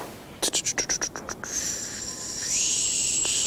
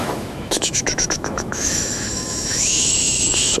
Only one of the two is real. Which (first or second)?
first